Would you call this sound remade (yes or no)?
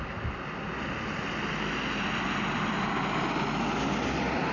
no